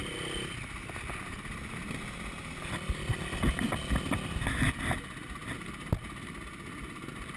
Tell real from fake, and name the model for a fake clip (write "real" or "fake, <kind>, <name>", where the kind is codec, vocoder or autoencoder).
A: real